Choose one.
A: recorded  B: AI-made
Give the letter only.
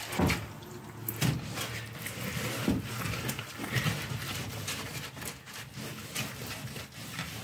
A